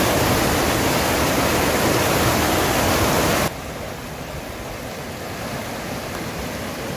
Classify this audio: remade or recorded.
recorded